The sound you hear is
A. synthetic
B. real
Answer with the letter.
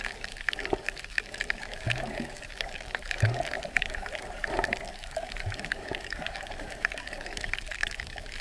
A